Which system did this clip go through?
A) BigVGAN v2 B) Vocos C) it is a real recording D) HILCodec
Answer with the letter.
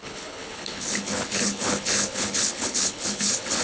D